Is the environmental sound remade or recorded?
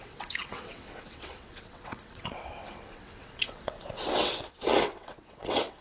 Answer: remade